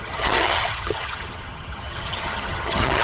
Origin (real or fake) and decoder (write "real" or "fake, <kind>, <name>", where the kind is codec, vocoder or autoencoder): fake, vocoder, HiFi-GAN